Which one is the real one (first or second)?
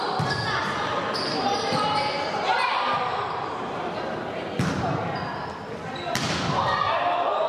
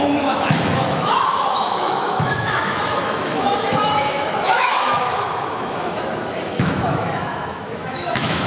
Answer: first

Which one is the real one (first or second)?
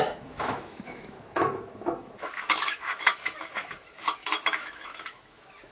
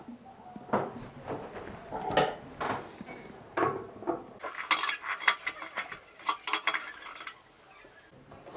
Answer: second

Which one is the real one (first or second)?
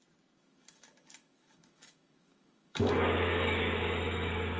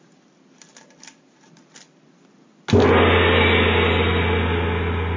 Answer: second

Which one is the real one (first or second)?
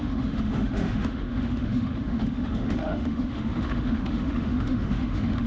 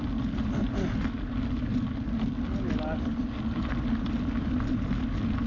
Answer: second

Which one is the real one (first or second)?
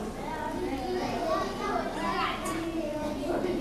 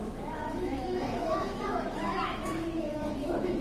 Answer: first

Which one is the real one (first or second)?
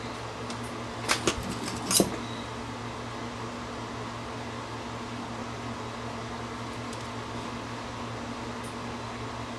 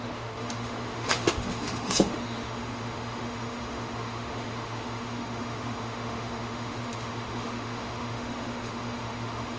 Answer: first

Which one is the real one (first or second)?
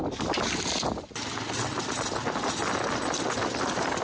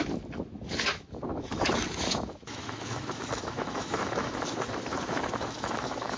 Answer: first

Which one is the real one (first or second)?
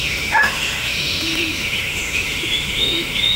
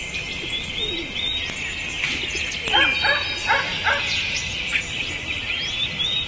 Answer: second